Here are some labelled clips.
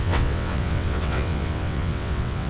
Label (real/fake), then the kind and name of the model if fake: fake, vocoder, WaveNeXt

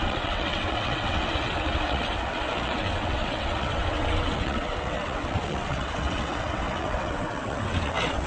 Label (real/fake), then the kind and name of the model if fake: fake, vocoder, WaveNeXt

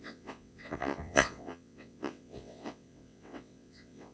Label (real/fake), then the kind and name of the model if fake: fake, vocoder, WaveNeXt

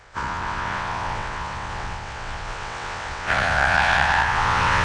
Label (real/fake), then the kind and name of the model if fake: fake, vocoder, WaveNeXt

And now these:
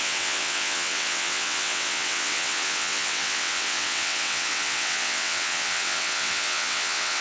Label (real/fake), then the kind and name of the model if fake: fake, vocoder, WaveNeXt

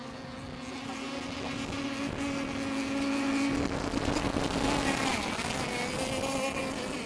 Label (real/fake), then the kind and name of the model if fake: real